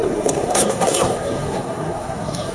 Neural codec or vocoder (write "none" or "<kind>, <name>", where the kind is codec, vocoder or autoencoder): codec, SNAC